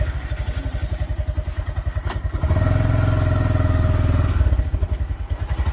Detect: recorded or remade recorded